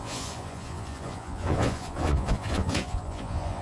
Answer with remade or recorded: remade